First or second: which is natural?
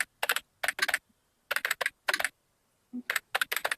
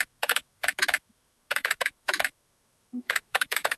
first